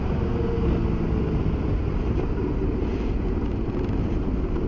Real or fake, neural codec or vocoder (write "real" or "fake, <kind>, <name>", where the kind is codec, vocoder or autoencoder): real